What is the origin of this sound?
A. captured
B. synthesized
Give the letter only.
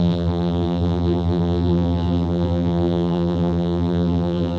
B